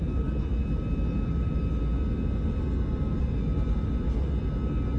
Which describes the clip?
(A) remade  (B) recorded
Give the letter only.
B